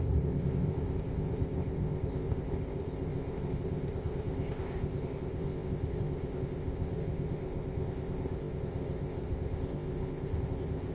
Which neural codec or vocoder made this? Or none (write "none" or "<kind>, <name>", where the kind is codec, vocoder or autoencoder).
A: codec, ZipCodec